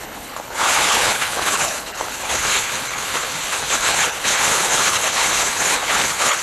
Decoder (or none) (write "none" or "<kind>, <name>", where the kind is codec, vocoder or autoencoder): codec, HILCodec